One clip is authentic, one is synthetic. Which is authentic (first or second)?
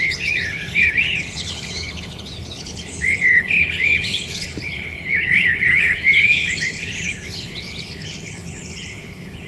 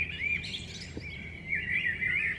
second